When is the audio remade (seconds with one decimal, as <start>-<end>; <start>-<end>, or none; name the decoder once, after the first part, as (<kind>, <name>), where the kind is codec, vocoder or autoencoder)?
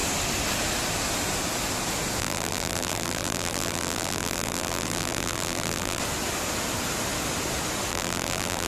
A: 2.2-6.0 (vocoder, BigVGAN v2); 7.9-8.7